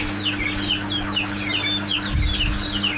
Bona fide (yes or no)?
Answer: yes